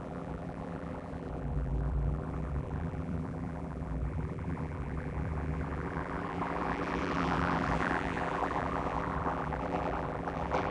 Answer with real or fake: fake